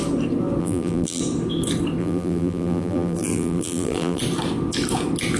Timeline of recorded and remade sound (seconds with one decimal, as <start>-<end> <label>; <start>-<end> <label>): 0.0-0.6 recorded; 0.6-1.2 remade; 1.2-2.0 recorded; 2.0-4.2 remade; 4.2-5.4 recorded